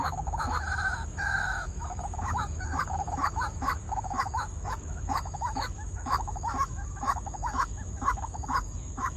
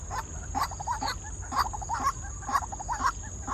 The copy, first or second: first